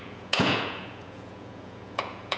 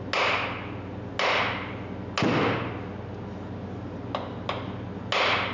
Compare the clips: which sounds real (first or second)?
second